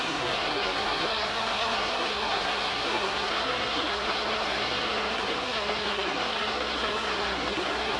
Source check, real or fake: fake